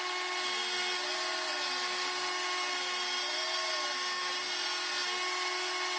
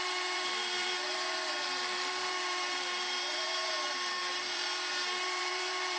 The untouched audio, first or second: first